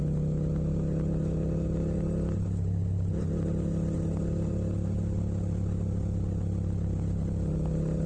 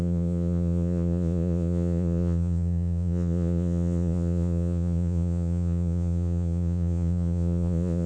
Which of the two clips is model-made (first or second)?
second